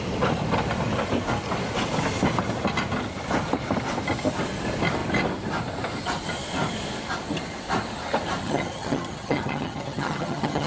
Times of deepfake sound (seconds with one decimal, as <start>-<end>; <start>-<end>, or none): 8.4-10.7